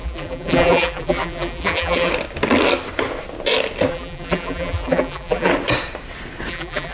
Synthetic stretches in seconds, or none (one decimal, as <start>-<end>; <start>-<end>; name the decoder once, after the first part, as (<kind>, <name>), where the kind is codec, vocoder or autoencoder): 0.0-2.1 (vocoder, BigVGAN v2); 3.9-5.5; 6.5-6.9